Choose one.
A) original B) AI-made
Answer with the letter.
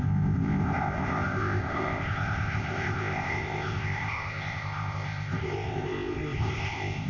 B